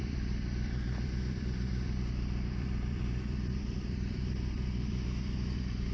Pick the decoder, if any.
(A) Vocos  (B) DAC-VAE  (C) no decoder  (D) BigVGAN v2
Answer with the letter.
D